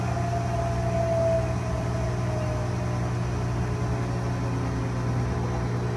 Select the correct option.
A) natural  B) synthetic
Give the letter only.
A